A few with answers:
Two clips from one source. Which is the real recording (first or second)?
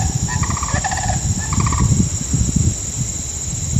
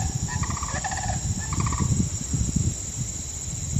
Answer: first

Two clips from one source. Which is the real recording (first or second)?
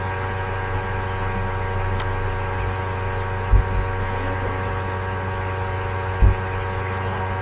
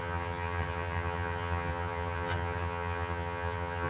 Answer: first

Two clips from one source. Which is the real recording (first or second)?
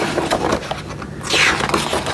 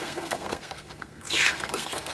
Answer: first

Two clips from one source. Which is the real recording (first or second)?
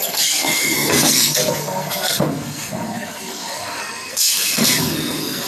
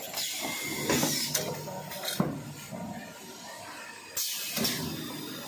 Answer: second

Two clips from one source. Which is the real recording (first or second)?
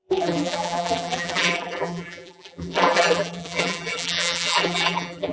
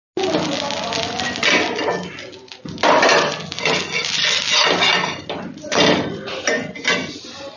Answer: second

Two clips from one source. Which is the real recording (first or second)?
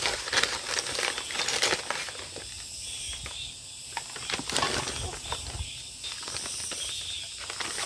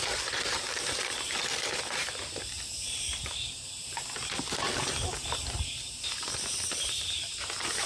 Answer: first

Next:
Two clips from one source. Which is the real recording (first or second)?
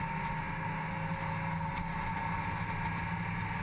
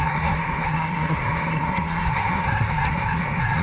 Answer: first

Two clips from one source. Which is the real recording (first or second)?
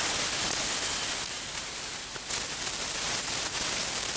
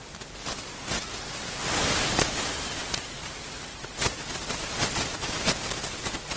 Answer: first